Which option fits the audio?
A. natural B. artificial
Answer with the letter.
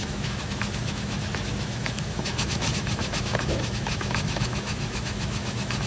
B